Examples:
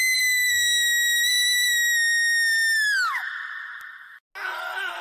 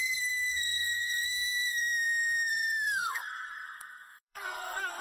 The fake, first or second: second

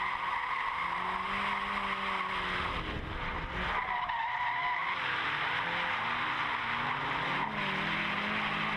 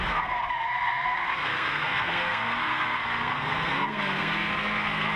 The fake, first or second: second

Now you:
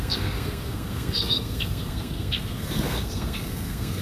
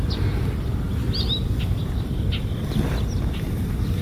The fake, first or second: first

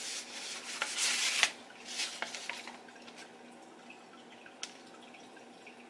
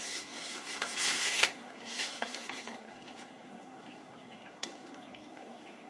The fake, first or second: second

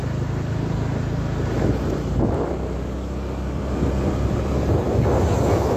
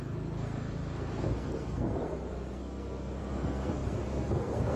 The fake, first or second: second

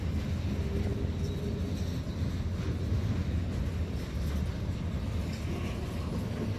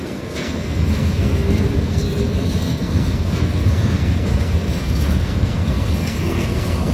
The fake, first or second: second